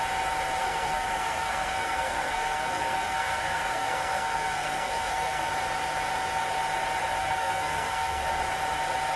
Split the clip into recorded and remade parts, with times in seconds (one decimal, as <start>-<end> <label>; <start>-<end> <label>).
0.0-0.6 recorded; 0.6-5.5 remade; 5.5-7.2 recorded; 7.2-8.4 remade; 8.4-9.2 recorded